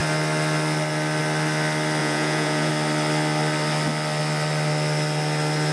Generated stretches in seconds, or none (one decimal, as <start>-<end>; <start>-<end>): 2.0-2.7

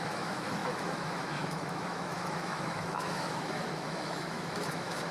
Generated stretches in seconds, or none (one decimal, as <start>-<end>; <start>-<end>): 0.0-5.1

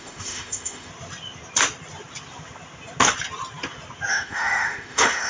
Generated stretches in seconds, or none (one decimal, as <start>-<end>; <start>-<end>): 0.0-0.9; 4.1-5.3